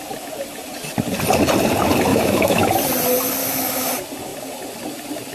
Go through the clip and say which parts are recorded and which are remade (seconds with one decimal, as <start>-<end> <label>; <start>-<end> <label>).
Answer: 0.0-2.1 recorded; 2.1-2.7 remade; 2.7-3.4 recorded; 3.4-3.9 remade; 3.9-5.3 recorded